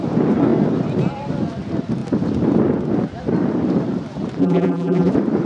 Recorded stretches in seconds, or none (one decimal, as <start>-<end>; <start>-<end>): 0.0-4.4; 5.1-5.5